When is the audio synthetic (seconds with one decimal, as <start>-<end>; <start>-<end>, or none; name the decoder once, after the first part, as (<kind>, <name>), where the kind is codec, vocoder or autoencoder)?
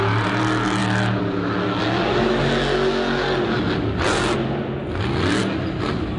none